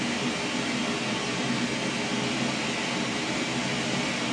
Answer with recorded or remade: recorded